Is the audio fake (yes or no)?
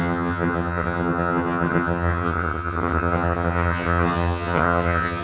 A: yes